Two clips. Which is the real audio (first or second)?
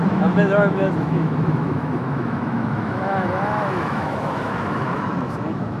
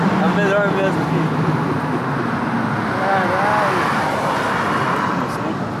second